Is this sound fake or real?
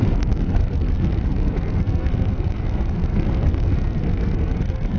fake